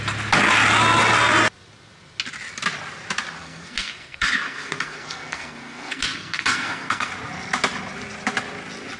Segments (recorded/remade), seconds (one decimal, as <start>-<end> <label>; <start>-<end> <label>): 0.0-3.4 recorded; 3.4-7.1 remade; 7.1-9.0 recorded